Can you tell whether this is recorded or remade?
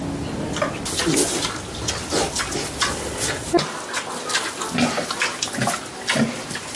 recorded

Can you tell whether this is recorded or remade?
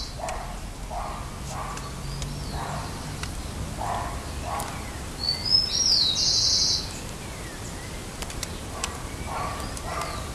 recorded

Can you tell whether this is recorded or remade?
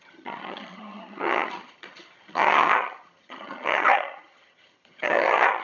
remade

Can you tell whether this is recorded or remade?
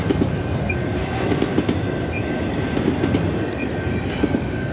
recorded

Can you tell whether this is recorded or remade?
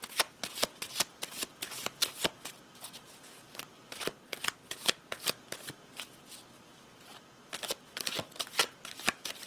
recorded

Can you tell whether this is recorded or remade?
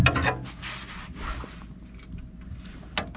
recorded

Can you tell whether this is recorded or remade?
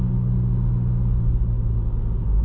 recorded